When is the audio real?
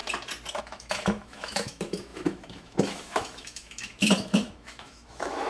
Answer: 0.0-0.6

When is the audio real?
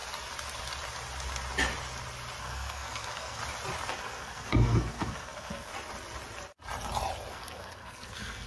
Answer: 0.0-2.4; 3.4-3.9; 5.7-7.3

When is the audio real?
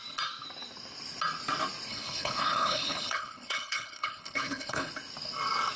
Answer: 0.0-1.9; 4.9-5.8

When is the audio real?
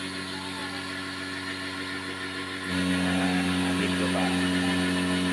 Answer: 0.0-5.3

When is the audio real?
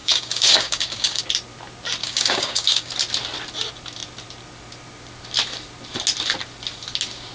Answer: 1.2-2.0; 2.9-7.3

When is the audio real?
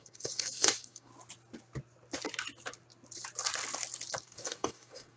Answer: 1.1-4.2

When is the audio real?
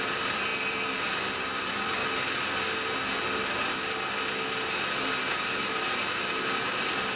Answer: 2.0-5.2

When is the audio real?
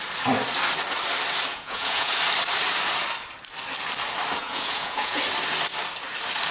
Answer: 0.0-1.5; 2.1-4.4; 5.2-6.5